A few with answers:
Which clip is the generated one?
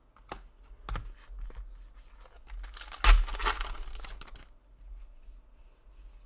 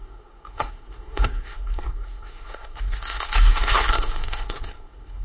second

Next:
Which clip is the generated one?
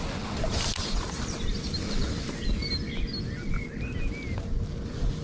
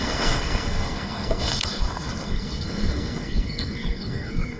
second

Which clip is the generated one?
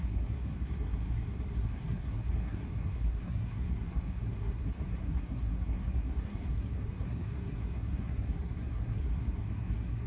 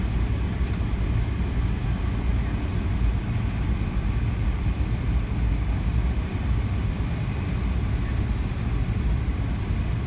first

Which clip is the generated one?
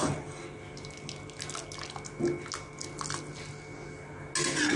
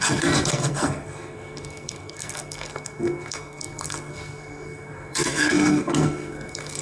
second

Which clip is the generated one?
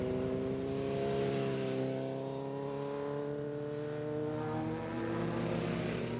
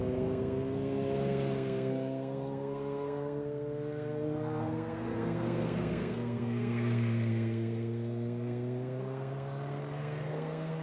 second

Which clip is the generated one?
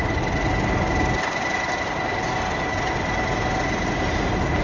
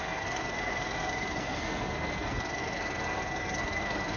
second